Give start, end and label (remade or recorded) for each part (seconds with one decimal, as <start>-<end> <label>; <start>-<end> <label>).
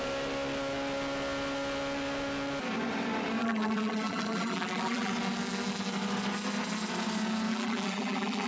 0.0-3.4 recorded; 3.4-5.1 remade; 5.1-7.5 recorded; 7.5-8.5 remade